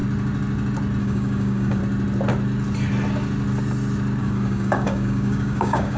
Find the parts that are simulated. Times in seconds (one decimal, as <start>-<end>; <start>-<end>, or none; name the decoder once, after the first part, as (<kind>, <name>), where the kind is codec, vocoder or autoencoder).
1.0-1.8 (codec, DAC); 4.2-6.0